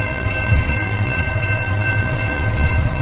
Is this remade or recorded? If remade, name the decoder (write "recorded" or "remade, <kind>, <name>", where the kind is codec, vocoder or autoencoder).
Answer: remade, vocoder, WaveNeXt